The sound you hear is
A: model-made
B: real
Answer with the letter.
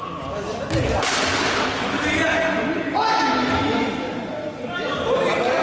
B